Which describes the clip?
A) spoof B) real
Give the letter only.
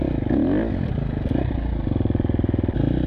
B